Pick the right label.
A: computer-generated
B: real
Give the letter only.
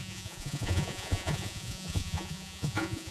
A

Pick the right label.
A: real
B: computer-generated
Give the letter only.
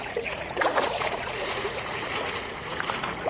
B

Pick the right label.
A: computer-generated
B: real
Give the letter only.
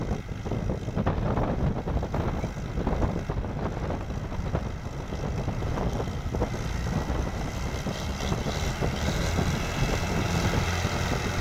B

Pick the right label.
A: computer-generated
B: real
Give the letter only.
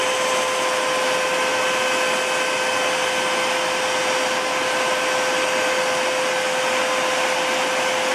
B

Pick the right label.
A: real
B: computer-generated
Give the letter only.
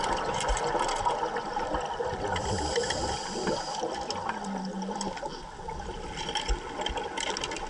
A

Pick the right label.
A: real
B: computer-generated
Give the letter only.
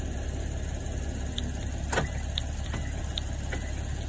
A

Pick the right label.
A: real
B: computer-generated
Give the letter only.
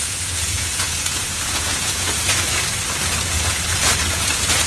B